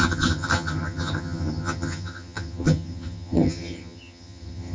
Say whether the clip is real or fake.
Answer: fake